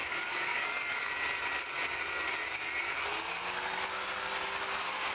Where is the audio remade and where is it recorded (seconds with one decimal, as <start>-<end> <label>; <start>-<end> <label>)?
0.0-1.1 remade; 1.1-5.1 recorded